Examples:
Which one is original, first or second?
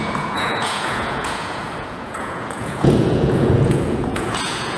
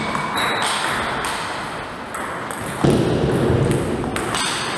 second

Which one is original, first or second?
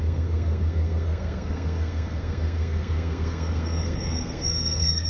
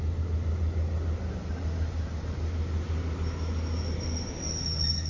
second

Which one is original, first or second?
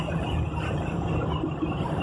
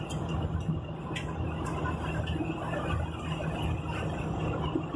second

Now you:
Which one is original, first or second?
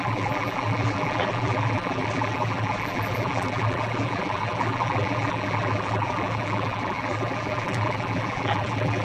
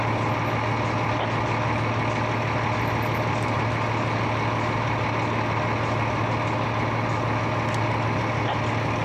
second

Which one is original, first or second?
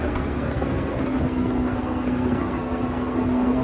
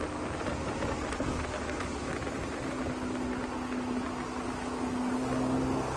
second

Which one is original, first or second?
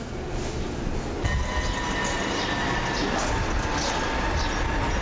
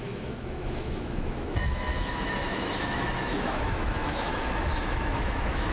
first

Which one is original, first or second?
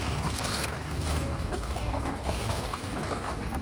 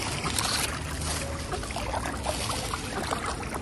second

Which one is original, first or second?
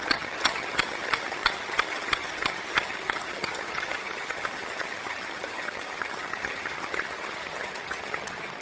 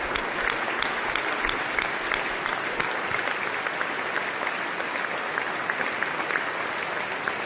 second